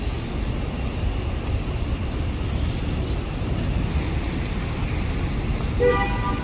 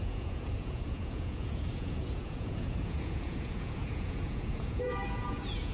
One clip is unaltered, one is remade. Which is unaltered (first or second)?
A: first